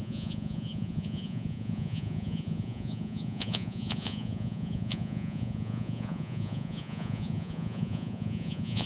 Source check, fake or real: fake